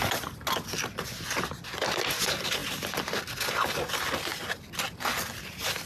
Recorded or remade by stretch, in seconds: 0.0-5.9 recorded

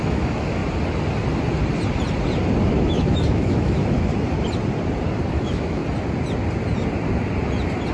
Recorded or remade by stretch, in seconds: 0.0-0.6 remade; 0.6-2.7 recorded; 2.7-4.1 remade; 4.1-5.3 recorded; 5.3-5.8 remade; 5.8-7.9 recorded